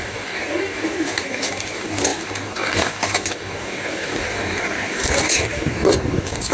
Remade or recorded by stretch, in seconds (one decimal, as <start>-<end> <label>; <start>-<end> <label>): 0.0-6.5 remade

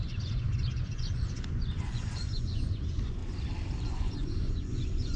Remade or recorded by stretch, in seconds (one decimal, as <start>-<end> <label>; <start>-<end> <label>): 0.0-3.2 remade; 3.2-3.9 recorded; 3.9-5.2 remade

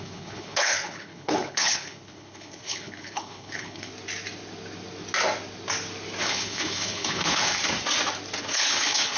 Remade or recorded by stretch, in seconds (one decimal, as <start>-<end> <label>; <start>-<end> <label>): 0.0-3.9 remade; 3.9-6.2 recorded; 6.2-7.6 remade; 7.6-8.4 recorded; 8.4-9.2 remade

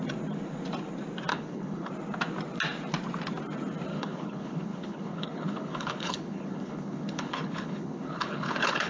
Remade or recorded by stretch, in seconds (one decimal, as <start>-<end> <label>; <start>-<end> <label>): 0.0-1.3 recorded; 1.3-1.9 remade; 1.9-3.9 recorded; 3.9-8.9 remade